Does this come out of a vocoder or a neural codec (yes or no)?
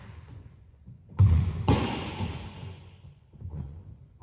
yes